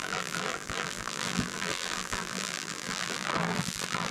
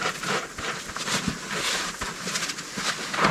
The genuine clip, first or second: second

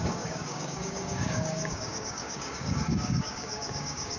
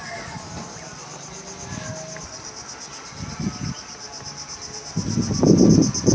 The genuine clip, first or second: second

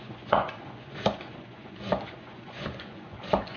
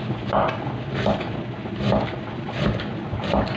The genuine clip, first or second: second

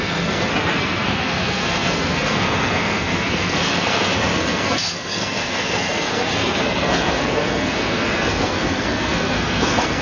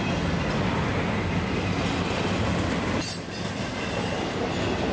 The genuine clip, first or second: second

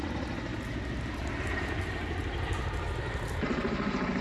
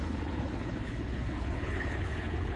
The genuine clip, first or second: first